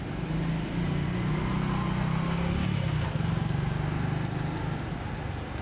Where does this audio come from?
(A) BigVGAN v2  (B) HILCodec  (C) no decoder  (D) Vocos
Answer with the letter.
C